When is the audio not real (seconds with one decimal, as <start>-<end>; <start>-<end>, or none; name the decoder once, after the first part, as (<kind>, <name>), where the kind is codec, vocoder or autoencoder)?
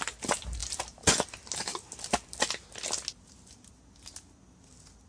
none